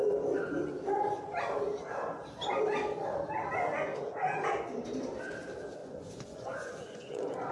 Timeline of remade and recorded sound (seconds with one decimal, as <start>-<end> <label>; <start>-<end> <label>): 0.0-5.8 recorded; 5.8-7.5 remade